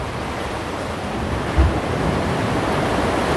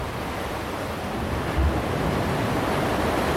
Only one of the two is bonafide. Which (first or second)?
second